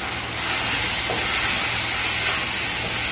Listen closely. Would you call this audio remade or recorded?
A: recorded